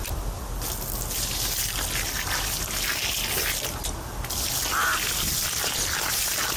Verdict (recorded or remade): recorded